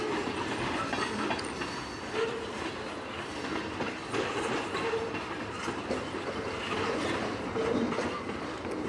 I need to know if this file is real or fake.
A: real